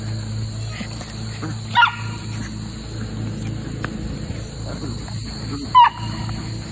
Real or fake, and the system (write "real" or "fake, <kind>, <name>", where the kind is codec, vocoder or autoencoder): real